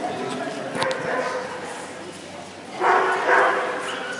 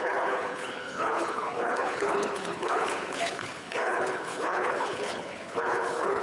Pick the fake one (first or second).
second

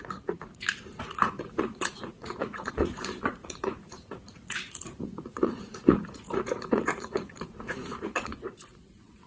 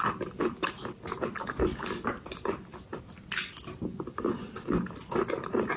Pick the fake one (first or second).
first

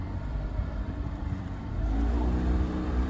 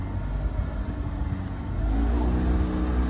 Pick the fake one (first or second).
first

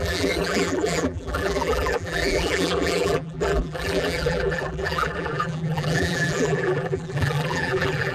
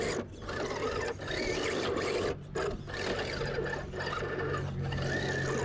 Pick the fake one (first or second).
first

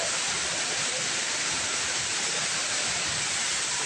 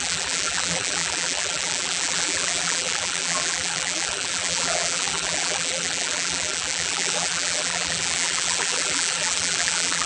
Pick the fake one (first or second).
second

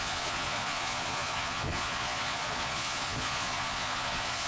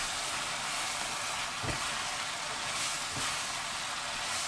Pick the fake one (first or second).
first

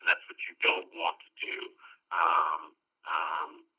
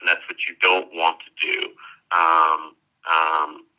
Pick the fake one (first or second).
first